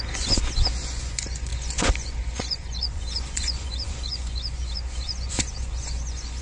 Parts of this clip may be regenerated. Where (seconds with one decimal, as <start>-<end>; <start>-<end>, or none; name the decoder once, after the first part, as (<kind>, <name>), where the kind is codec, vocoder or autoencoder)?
0.0-6.4 (vocoder, Vocos)